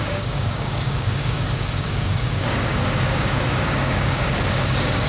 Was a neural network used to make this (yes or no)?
yes